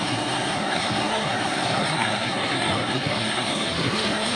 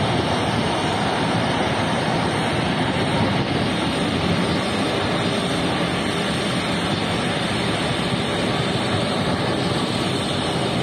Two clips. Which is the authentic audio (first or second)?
second